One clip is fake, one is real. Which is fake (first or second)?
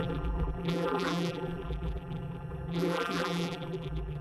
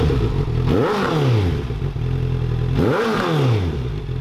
first